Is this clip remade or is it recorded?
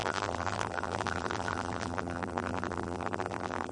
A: remade